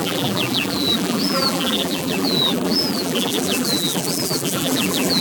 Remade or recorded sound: remade